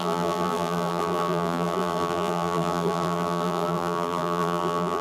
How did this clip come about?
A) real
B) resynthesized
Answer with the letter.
B